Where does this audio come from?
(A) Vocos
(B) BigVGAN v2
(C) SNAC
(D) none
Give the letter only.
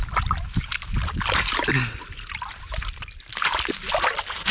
D